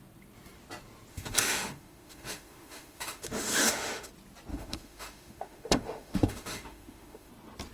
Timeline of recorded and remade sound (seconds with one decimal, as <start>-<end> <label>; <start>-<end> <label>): 0.0-1.1 recorded; 1.1-4.1 remade; 4.1-4.5 recorded; 4.5-7.3 remade; 7.3-7.7 recorded